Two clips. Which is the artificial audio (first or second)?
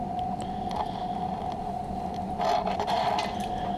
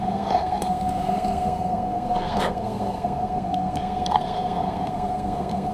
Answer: second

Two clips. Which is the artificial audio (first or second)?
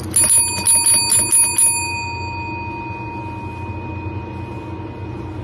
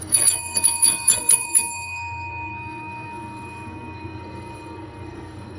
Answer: second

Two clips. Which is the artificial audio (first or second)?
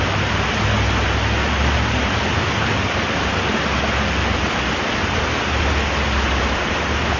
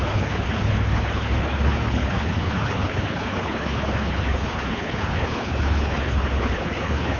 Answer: second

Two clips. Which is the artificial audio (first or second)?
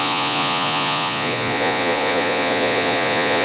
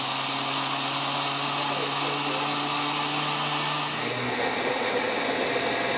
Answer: first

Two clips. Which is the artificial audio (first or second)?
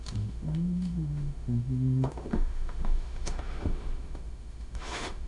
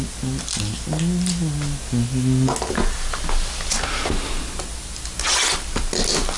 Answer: first